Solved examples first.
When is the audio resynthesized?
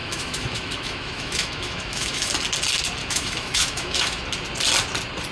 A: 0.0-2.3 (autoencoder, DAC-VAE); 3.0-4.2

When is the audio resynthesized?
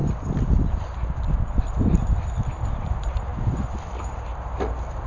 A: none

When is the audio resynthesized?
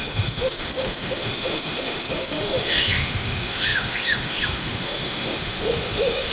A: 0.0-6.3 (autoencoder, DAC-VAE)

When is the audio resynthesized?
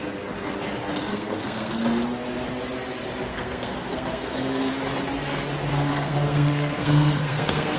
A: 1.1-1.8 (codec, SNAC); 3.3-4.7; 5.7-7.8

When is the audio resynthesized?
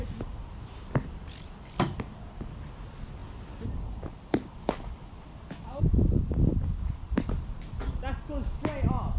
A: none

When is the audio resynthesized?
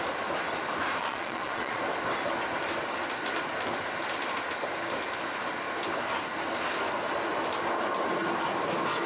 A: 1.0-1.8 (vocoder, Vocos)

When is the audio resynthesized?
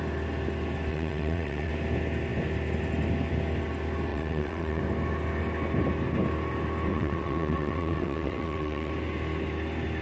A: 0.9-1.7 (vocoder, WaveNeXt); 4.1-4.8; 6.9-8.9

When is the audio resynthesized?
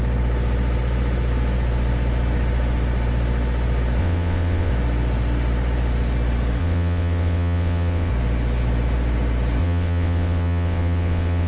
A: 4.0-4.7 (vocoder, WaveNeXt); 6.6-8.1; 9.6-11.5